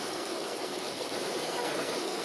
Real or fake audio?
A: fake